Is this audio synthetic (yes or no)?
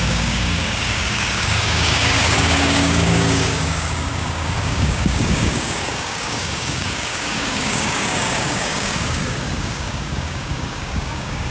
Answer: yes